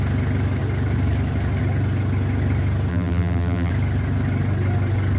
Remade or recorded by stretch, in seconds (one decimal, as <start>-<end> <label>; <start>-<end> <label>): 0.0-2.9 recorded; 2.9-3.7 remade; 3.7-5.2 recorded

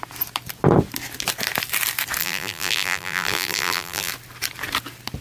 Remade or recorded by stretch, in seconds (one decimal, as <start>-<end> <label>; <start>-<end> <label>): 0.0-2.2 recorded; 2.2-4.1 remade; 4.1-5.2 recorded

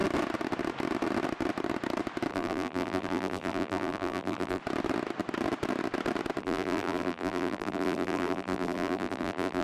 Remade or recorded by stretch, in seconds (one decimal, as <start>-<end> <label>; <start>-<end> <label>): 0.0-2.3 recorded; 2.3-4.6 remade; 4.6-6.4 recorded; 6.4-9.6 remade